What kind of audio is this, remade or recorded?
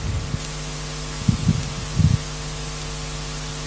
recorded